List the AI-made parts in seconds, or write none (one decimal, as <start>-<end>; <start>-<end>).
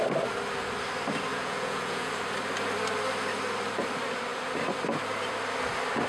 1.3-2.1